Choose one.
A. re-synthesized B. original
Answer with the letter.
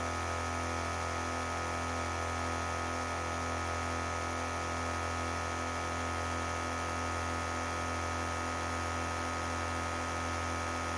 B